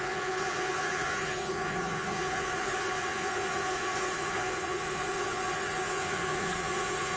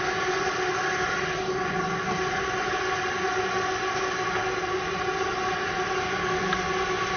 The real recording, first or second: second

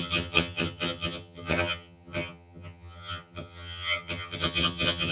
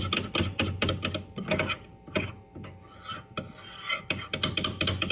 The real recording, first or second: second